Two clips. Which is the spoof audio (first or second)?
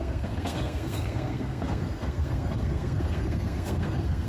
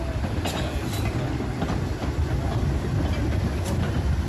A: first